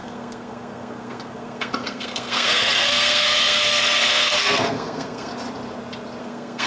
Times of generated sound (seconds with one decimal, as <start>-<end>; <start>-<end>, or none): 0.0-5.3; 6.2-6.7